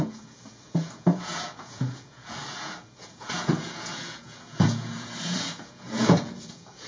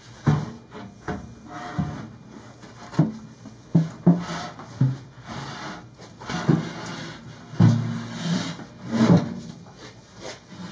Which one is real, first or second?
second